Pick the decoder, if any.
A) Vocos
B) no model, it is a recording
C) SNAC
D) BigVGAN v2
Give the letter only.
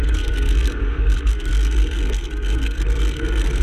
C